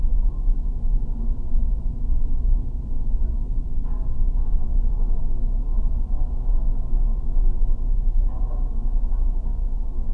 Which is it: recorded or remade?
recorded